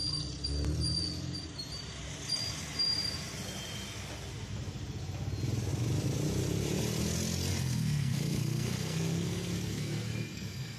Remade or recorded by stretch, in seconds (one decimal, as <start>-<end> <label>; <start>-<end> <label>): 0.0-7.5 recorded; 7.5-10.8 remade